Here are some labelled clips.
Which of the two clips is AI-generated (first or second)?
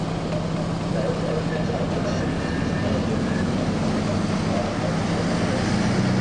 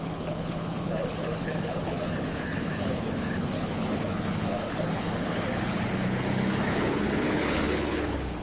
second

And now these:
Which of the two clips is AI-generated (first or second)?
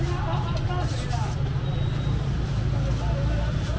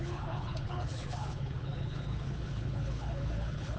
second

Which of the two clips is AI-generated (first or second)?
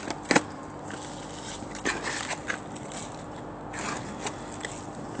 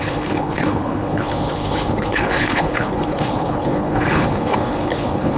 second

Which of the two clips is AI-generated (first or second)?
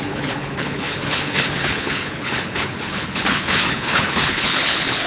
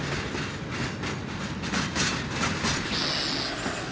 first